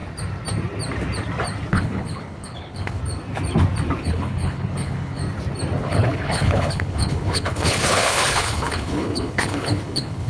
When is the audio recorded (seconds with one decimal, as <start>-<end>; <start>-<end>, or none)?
0.0-1.7; 3.0-4.0; 5.2-5.8